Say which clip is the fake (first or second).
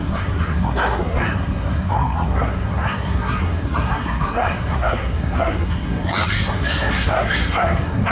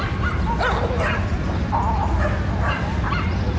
first